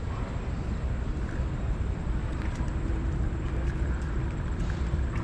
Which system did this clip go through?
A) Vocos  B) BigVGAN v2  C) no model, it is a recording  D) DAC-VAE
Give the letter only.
B